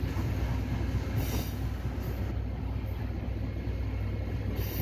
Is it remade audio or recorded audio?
recorded